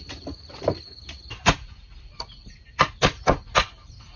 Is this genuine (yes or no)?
yes